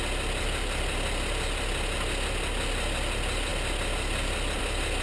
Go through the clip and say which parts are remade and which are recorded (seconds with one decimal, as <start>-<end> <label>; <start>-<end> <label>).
0.0-5.0 recorded